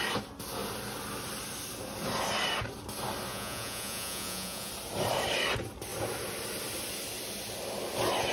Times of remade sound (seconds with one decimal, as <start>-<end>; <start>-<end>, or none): 3.3-4.7